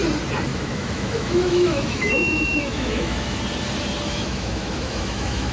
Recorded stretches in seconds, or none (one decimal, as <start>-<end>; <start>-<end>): 0.0-0.5; 3.4-4.1